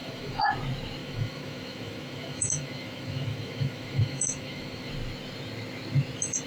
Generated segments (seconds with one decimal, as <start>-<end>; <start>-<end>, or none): 0.0-0.5; 1.0-4.9